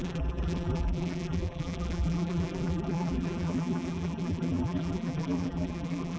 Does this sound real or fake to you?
fake